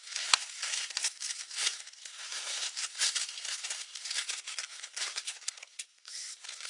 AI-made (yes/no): yes